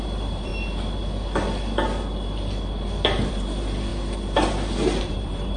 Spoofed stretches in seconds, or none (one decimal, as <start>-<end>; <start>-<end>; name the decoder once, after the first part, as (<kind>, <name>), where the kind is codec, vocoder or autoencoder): 0.0-0.5 (vocoder, BigVGAN v2); 3.3-3.9; 5.0-5.6